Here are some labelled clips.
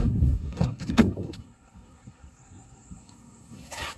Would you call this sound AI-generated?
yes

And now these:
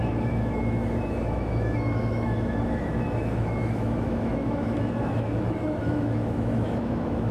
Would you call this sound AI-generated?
yes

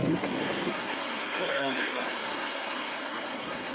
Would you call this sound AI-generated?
yes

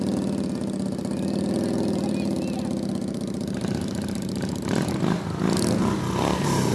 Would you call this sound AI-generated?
no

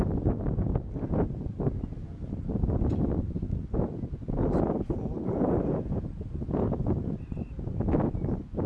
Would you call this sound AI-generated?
no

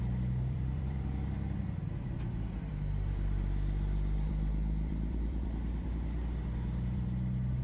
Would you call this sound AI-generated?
yes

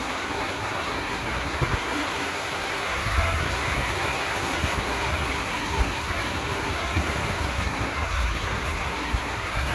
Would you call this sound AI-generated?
yes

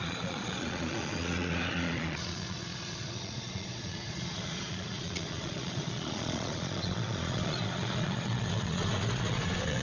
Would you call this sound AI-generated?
yes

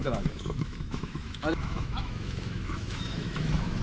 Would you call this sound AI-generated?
yes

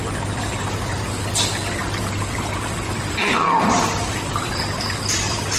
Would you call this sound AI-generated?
yes